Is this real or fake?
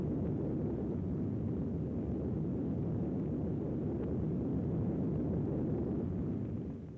real